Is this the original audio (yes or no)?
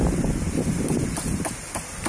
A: yes